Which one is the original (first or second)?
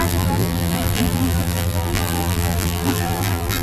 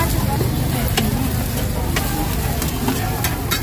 second